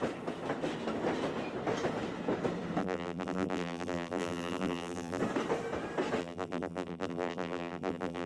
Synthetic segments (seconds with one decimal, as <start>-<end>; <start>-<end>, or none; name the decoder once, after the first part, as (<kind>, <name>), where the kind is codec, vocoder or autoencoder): 2.8-5.2 (vocoder, BigVGAN v2); 6.2-8.3